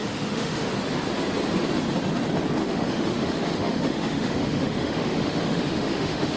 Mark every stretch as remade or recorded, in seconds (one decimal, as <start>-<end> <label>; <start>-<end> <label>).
0.0-0.7 remade; 0.7-2.6 recorded; 2.6-6.4 remade